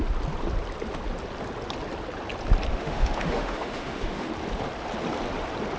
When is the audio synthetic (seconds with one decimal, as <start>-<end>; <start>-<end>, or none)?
2.7-4.3